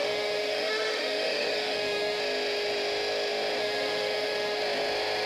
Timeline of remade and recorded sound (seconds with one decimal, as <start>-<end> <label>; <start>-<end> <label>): 0.0-2.2 remade; 2.2-3.6 recorded; 3.6-4.6 remade; 4.6-5.3 recorded